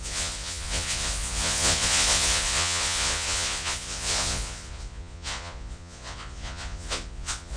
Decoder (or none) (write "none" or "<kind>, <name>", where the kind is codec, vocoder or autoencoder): vocoder, Vocos